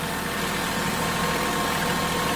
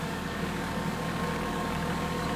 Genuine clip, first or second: first